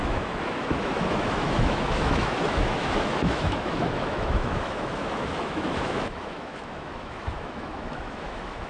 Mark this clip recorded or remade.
remade